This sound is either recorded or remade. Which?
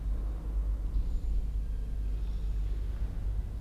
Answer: recorded